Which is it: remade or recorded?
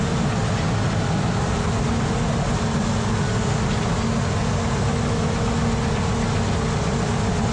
recorded